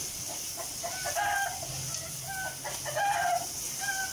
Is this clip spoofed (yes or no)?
no